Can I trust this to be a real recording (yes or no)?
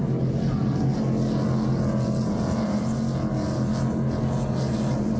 yes